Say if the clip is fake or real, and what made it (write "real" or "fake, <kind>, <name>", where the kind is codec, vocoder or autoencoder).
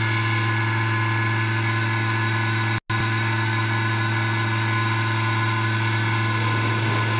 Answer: real